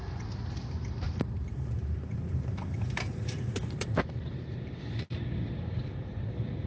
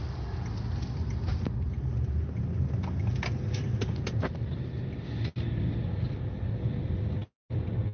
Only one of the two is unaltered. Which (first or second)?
second